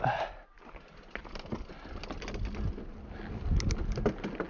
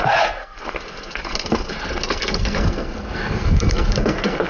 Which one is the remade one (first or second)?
second